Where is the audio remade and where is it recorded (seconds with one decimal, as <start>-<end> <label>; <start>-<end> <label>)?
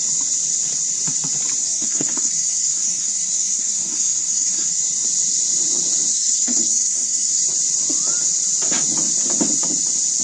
0.0-1.6 recorded; 1.6-4.8 remade; 4.8-6.1 recorded; 6.1-7.4 remade; 7.4-10.2 recorded